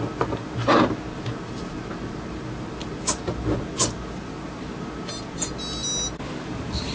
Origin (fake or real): real